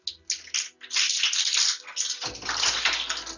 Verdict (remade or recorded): recorded